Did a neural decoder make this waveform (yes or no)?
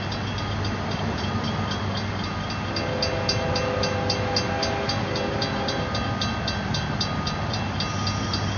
no